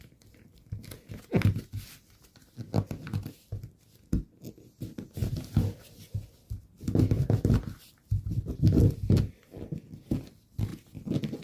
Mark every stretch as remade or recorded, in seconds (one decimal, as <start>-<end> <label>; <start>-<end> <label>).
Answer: 0.0-11.4 recorded